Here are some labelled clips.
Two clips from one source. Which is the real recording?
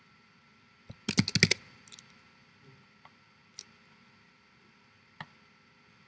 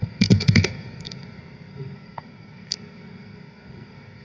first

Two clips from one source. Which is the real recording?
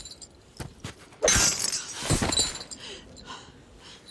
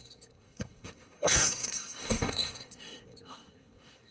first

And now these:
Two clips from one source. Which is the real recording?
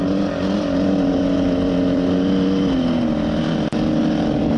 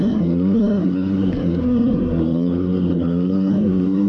first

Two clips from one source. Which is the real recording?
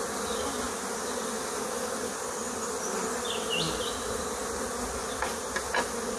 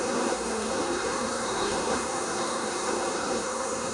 first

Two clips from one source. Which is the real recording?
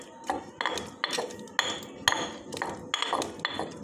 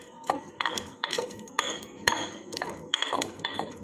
first